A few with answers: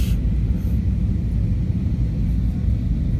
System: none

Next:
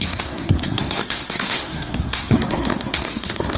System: codec, SNAC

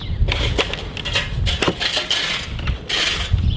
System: none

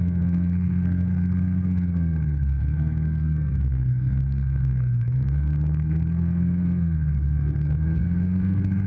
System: codec, SNAC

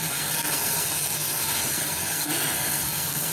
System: codec, SNAC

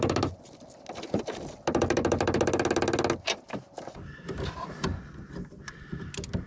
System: none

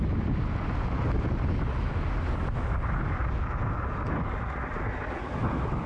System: none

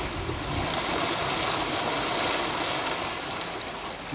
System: none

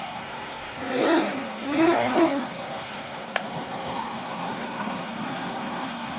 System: codec, SNAC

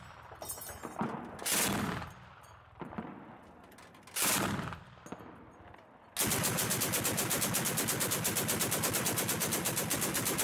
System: none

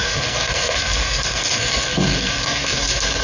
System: codec, SNAC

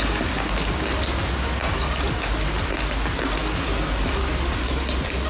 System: none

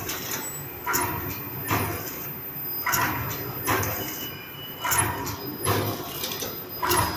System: none